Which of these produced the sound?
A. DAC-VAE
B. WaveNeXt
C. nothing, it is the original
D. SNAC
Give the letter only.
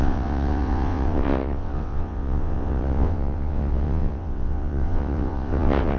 B